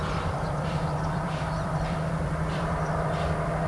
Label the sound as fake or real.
fake